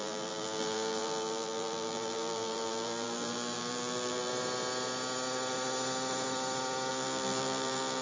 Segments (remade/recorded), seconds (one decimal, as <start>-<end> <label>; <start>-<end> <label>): 0.0-4.3 remade; 4.3-6.9 recorded; 6.9-8.0 remade